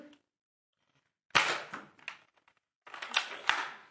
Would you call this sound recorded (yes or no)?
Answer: yes